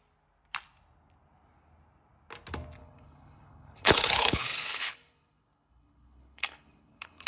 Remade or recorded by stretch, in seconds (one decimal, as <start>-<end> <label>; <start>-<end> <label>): 0.0-2.8 recorded; 2.8-7.3 remade